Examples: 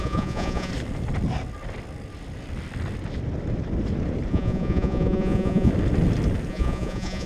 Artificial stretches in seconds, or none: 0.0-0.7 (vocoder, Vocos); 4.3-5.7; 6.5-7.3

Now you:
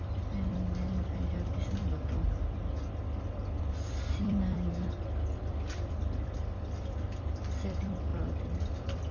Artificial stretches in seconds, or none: 0.0-1.8 (vocoder, BigVGAN v2); 3.6-9.1

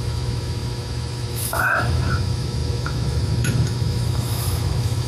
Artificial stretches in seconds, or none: 0.0-5.1 (autoencoder, DAC-VAE)

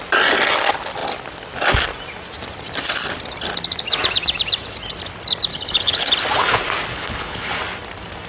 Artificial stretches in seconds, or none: 5.5-6.1 (codec, HILCodec); 6.9-7.5

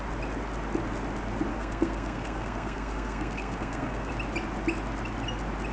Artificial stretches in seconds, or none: 1.5-4.1 (codec, SNAC)

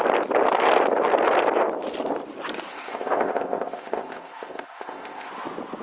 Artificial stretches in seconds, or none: 2.7-5.3 (codec, ZipCodec)